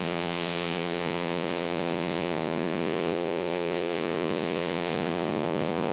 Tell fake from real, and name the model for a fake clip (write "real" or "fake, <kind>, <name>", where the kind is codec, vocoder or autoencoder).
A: fake, vocoder, Vocos